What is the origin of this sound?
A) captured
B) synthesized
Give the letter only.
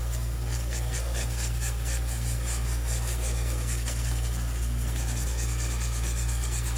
B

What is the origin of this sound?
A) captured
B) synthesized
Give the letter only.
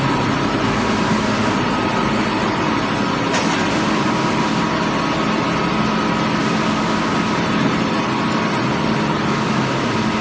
A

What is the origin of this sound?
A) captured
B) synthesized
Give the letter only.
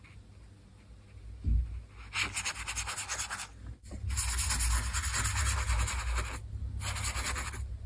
A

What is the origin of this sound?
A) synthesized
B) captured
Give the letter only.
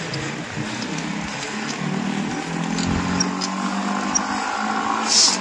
B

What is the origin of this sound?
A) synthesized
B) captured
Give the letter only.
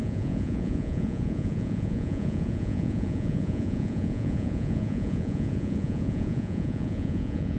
A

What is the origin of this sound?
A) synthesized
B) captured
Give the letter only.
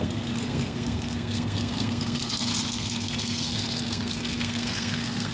A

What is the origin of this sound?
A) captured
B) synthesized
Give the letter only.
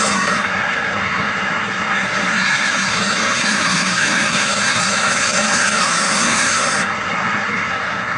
B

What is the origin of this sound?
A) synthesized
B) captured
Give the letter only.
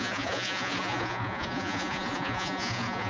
A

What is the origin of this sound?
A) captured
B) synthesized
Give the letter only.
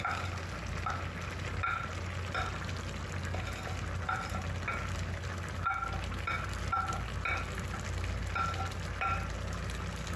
A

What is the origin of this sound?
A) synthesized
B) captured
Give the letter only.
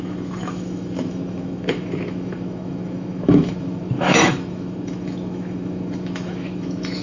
A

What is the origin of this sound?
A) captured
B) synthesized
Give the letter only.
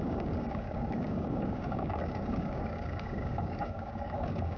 B